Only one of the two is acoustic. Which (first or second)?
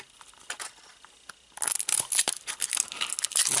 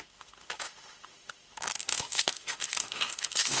first